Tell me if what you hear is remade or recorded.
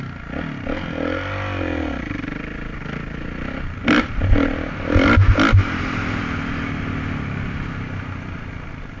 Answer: recorded